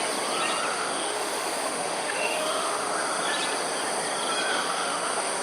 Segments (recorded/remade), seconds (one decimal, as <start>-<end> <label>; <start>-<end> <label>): 0.0-0.7 recorded; 0.7-2.9 remade; 2.9-4.5 recorded; 4.5-5.4 remade